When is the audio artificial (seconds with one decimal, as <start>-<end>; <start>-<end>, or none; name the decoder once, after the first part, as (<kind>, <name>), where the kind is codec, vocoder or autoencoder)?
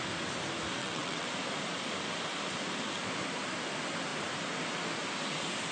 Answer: 0.8-1.3 (vocoder, WaveNeXt)